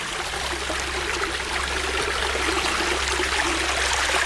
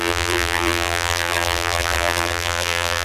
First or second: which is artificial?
second